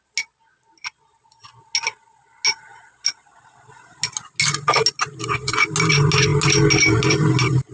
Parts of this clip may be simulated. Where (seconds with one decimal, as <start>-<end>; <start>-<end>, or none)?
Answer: none